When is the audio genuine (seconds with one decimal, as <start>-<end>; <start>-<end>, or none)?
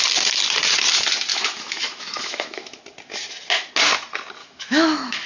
0.0-1.3; 2.8-4.4